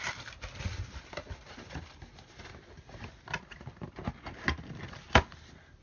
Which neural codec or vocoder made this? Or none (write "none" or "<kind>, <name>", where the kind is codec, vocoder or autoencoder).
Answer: none